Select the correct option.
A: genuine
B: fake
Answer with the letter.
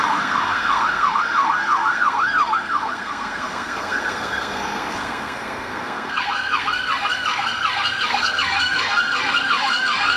B